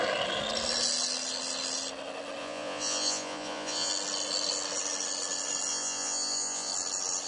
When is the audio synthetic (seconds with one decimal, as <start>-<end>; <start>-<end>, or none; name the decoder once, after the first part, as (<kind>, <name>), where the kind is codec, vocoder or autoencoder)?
2.4-3.9 (vocoder, Vocos); 5.7-6.7